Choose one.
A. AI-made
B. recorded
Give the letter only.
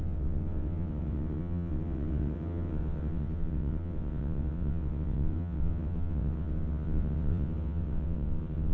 A